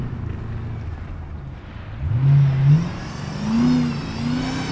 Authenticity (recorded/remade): recorded